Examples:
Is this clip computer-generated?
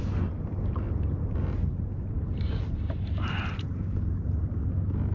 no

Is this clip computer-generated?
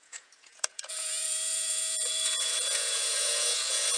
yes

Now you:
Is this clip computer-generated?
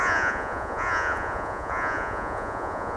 yes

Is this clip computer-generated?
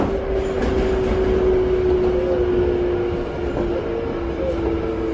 no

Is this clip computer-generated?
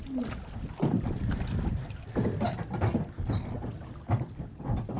no